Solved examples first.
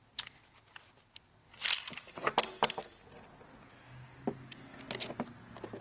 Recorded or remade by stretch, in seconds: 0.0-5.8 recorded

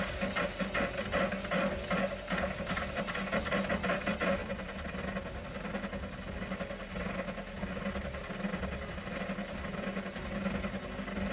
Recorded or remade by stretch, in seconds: 0.0-4.4 recorded; 4.4-5.1 remade; 5.1-11.3 recorded

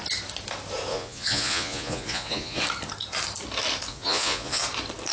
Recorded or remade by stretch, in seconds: 0.0-0.9 recorded; 0.9-2.6 remade; 2.6-3.9 recorded; 3.9-4.6 remade; 4.6-5.1 recorded

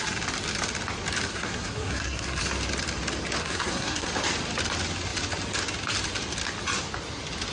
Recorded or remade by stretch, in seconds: 0.0-1.3 recorded; 1.3-2.4 remade; 2.4-3.4 recorded; 3.4-4.1 remade; 4.1-7.5 recorded

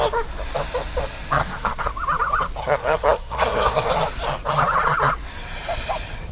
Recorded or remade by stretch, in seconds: 0.0-1.4 recorded; 1.4-1.9 remade; 1.9-2.6 recorded; 2.6-3.9 remade; 3.9-6.3 recorded

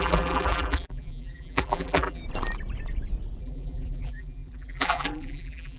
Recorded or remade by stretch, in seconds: 0.0-2.2 remade; 2.2-3.4 recorded; 3.4-5.8 remade

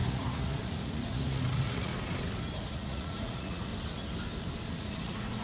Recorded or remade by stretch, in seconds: 0.0-1.9 remade; 1.9-2.7 recorded; 2.7-3.7 remade; 3.7-4.7 recorded; 4.7-5.4 remade